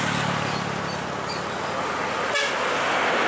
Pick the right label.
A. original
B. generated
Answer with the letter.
A